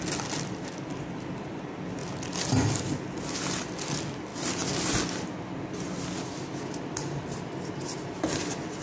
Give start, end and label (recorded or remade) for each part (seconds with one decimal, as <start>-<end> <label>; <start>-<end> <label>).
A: 0.0-8.8 recorded